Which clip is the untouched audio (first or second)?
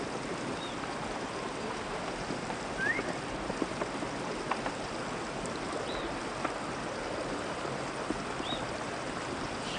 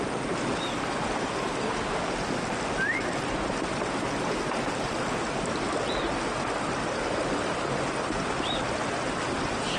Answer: second